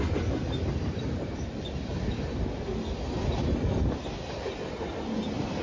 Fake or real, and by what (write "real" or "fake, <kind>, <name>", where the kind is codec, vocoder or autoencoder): real